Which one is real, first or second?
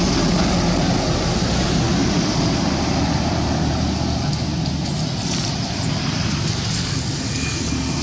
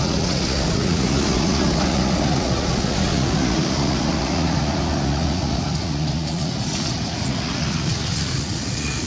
first